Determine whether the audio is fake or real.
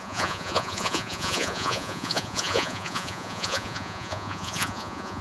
fake